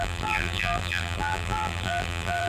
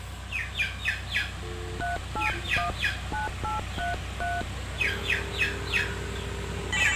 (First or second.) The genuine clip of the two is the second